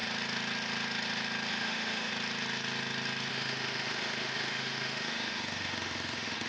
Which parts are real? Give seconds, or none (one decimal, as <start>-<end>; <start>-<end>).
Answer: 0.0-1.5; 2.1-3.3